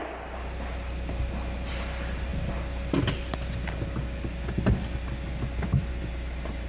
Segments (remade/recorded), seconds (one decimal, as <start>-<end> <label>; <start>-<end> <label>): 0.0-2.3 remade; 2.3-6.1 recorded; 6.1-6.7 remade